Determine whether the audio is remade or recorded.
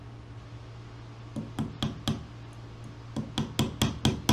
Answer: recorded